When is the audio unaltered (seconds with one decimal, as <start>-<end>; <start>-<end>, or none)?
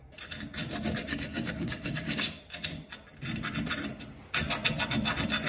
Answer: 0.0-1.1; 2.4-5.5